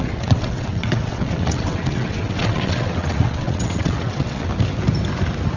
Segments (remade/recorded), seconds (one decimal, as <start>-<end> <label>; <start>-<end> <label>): 0.0-4.5 remade; 4.5-5.6 recorded